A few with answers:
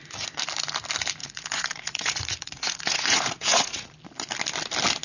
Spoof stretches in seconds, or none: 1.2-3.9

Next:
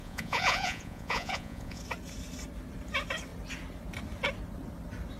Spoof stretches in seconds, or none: 0.0-1.8

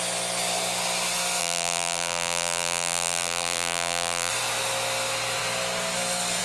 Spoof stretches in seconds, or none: 1.4-4.3